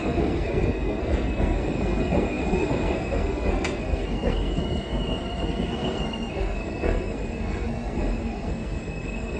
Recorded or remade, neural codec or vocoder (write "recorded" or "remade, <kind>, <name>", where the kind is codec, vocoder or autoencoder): remade, codec, SNAC